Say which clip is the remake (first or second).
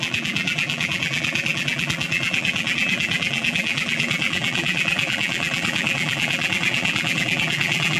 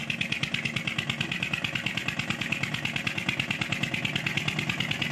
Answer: first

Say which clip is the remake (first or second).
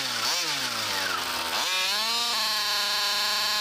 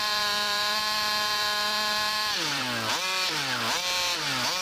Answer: second